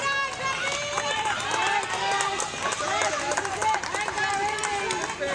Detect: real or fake real